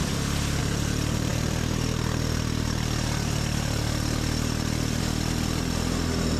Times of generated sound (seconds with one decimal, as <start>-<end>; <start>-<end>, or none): 0.0-0.6